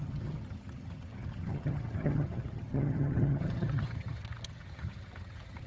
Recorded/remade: remade